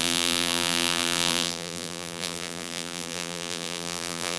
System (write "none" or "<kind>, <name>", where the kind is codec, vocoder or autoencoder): vocoder, BigVGAN v2